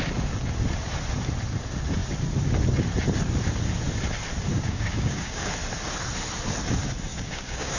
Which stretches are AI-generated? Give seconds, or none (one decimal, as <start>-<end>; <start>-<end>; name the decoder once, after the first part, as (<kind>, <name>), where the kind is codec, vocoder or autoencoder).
4.5-5.5 (codec, DAC); 7.1-7.8